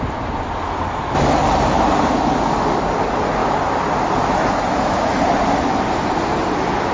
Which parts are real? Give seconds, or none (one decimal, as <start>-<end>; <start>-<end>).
0.0-1.4; 2.1-6.9